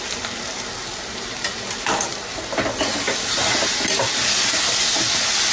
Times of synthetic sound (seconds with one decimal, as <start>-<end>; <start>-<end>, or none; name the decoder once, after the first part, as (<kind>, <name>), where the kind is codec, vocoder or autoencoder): none